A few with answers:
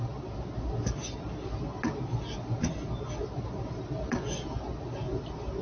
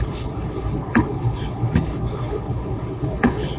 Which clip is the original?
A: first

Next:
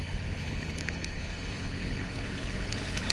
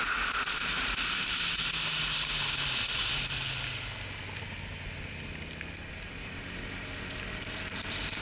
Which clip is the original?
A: second